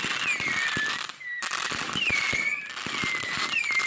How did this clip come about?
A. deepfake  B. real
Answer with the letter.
B